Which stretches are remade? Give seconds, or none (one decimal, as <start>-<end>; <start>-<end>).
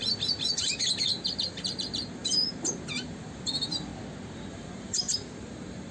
0.0-3.9; 4.5-5.9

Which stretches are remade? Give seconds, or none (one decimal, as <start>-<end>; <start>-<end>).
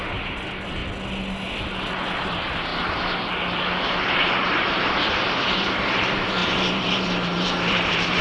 0.0-0.8; 2.2-2.7; 4.0-8.2